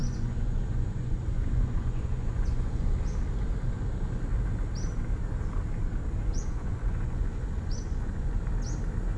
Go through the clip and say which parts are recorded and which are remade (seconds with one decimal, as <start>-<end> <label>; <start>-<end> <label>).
0.0-2.9 remade; 2.9-6.2 recorded; 6.2-8.4 remade; 8.4-9.2 recorded